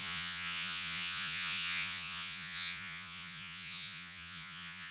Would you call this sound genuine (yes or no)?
no